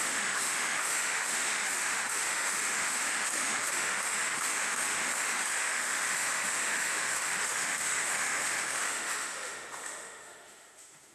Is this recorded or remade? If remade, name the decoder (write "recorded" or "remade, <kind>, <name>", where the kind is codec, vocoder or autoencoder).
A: remade, autoencoder, DAC-VAE